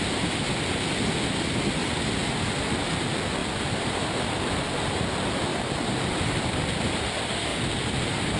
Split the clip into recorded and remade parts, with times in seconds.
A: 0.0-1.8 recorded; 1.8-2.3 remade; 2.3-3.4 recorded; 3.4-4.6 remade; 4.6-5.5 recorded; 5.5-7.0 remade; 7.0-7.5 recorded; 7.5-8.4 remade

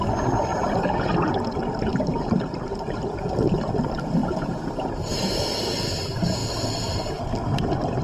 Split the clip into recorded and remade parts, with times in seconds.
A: 0.0-0.5 recorded; 0.5-1.3 remade; 1.3-1.9 recorded; 1.9-3.1 remade; 3.1-4.2 recorded; 4.2-5.1 remade; 5.1-6.4 recorded; 6.4-7.1 remade; 7.1-8.0 recorded

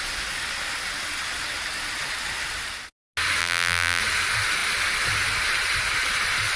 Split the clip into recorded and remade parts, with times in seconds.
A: 0.0-3.4 recorded; 3.4-4.0 remade; 4.0-6.6 recorded